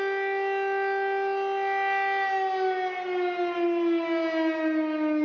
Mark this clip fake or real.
real